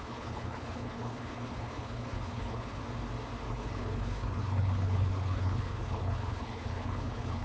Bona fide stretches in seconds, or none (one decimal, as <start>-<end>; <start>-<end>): 2.8-3.5